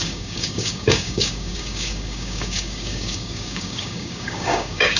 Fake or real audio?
fake